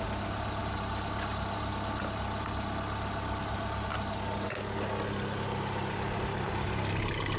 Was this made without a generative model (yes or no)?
yes